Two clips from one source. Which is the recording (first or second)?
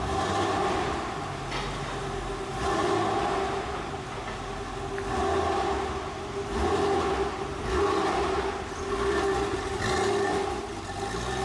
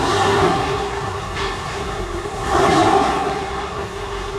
first